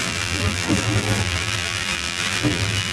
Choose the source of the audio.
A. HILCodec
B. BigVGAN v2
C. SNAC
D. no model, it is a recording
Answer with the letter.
B